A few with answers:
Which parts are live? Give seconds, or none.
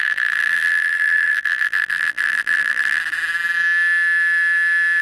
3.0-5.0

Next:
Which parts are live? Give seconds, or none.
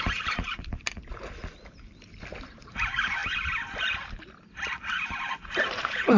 1.0-2.4; 3.2-4.9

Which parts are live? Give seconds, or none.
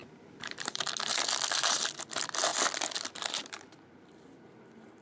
0.9-5.0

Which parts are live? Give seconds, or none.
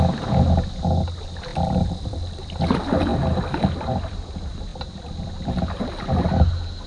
0.0-1.5; 2.6-4.7; 5.9-6.9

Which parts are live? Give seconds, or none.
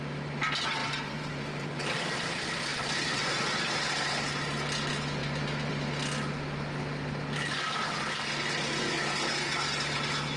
0.0-0.8; 2.1-5.2; 5.7-10.4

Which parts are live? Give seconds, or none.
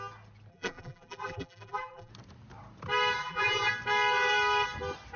0.0-0.5; 2.1-3.2; 3.7-5.2